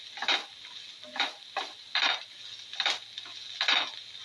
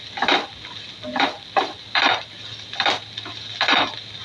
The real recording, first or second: first